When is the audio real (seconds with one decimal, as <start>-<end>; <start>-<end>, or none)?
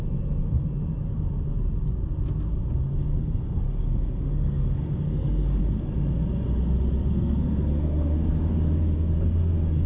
0.0-3.1; 5.6-7.1; 8.3-9.9